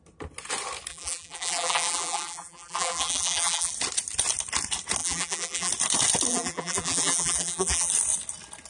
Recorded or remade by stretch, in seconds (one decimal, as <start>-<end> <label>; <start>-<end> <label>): 0.0-0.9 recorded; 0.9-3.7 remade; 3.7-5.0 recorded; 5.0-5.7 remade; 5.7-6.3 recorded; 6.3-7.9 remade; 7.9-8.7 recorded